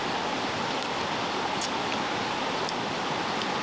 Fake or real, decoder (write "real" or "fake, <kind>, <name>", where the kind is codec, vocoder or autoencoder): real